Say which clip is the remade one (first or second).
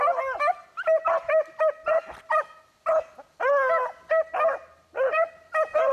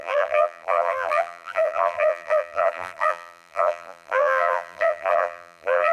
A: second